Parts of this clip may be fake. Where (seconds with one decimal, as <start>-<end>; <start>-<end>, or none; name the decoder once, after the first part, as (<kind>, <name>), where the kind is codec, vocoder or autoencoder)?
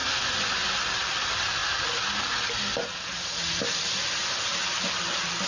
0.0-0.7 (vocoder, Vocos)